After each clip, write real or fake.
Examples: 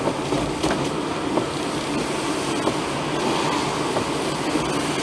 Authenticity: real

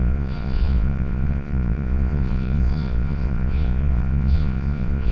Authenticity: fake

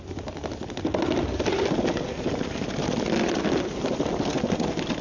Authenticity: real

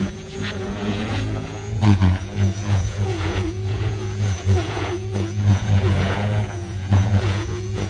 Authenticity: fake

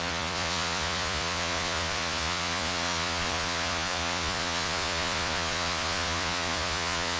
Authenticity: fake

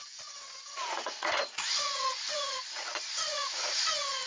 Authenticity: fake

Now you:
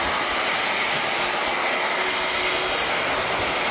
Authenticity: real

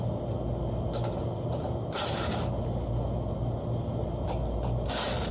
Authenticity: real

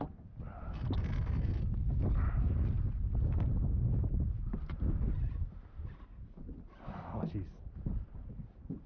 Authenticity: real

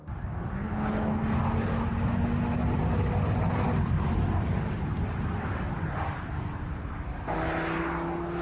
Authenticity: real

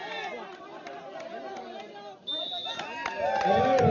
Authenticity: real